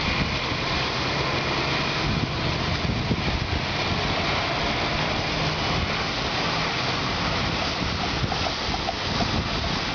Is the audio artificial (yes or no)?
no